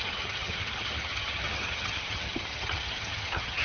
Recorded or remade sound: remade